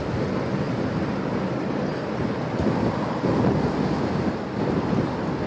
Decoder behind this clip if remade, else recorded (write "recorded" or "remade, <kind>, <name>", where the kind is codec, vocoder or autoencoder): recorded